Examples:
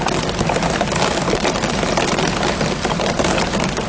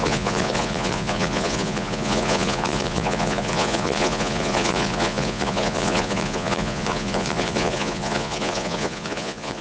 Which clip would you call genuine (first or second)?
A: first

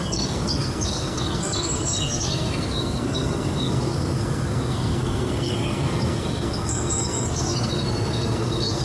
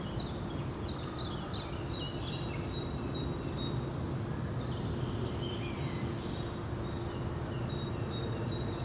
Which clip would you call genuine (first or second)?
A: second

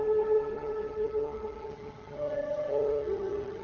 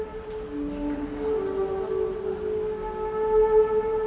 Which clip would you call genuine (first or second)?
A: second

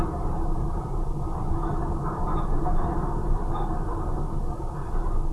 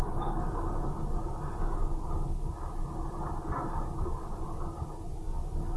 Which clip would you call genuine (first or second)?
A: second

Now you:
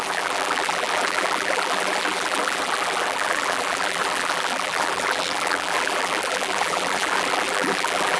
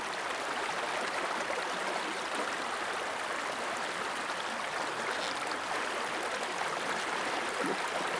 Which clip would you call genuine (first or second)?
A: second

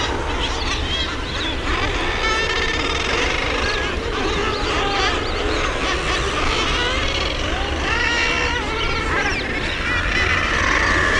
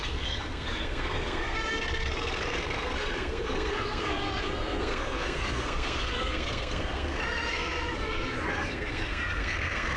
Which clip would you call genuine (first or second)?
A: first